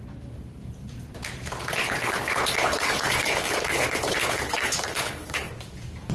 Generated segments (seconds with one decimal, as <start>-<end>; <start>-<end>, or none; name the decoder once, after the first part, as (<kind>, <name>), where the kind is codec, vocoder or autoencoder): 1.8-5.5 (codec, HILCodec)